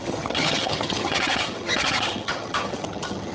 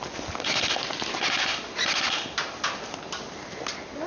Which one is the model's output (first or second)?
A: first